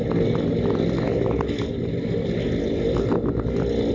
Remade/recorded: recorded